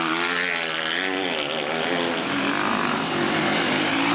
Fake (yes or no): no